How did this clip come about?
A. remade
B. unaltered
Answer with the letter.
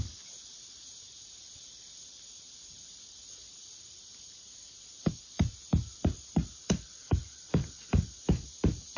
A